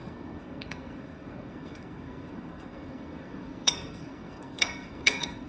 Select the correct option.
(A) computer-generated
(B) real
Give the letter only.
A